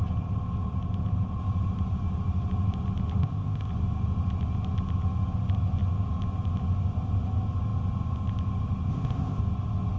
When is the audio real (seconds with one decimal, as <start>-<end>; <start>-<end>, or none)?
0.0-3.2; 3.7-8.9; 9.4-10.0